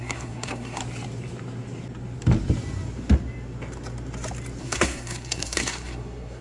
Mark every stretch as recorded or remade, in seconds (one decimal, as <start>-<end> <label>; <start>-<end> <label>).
0.0-0.8 remade; 0.8-4.6 recorded; 4.6-6.4 remade